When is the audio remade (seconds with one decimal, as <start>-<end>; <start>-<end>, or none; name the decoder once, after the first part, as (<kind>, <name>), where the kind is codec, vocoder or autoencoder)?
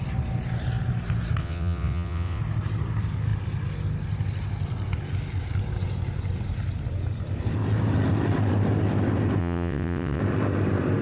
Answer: 1.4-2.4 (vocoder, WaveNeXt); 9.4-10.2